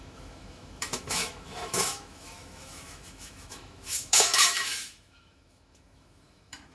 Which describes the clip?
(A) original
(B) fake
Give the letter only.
B